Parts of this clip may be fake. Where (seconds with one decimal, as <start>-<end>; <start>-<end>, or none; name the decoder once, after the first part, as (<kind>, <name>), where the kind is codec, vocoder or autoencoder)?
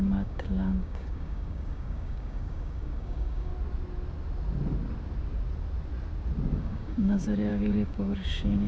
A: 0.0-3.5 (codec, DAC); 6.6-8.7